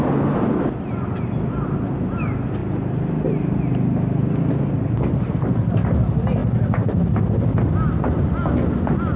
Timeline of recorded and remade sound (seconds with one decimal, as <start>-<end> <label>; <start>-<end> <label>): 0.0-9.2 recorded

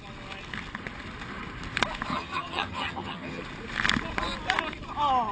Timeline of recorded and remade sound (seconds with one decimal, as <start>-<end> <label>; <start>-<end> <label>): 0.0-2.1 recorded; 2.1-3.4 remade; 3.4-5.3 recorded

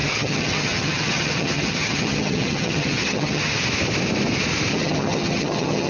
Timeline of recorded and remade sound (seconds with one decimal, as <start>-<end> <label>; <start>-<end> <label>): 0.0-3.5 remade; 3.5-4.7 recorded; 4.7-5.9 remade

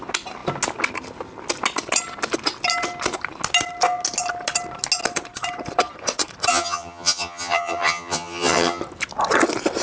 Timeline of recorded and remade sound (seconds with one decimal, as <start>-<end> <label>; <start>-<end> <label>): 0.0-6.5 recorded; 6.5-8.8 remade; 8.8-9.8 recorded

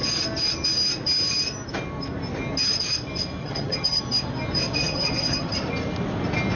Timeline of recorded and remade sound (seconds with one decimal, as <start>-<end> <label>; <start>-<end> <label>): 0.0-3.4 recorded; 3.4-4.0 remade; 4.0-4.8 recorded; 4.8-5.5 remade; 5.5-6.6 recorded

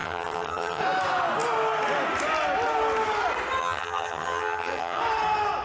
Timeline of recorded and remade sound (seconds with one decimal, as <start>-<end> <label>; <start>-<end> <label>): 0.0-0.8 remade; 0.8-3.6 recorded; 3.6-5.0 remade; 5.0-5.6 recorded

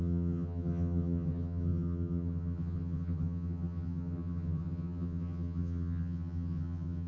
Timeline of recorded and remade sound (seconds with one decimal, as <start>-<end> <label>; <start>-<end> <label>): 0.0-7.1 remade

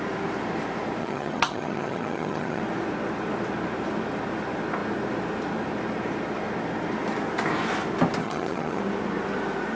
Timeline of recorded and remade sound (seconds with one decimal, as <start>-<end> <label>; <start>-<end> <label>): 0.0-1.0 recorded; 1.0-2.6 remade; 2.6-8.2 recorded; 8.2-8.8 remade; 8.8-9.7 recorded